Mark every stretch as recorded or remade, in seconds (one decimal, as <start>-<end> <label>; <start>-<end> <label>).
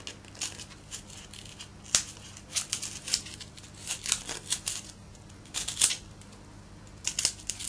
0.0-7.7 recorded